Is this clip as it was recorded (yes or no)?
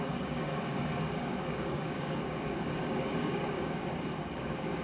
no